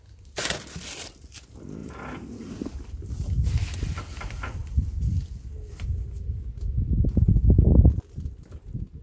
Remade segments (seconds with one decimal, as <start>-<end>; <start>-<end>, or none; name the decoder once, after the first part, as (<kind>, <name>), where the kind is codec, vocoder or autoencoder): none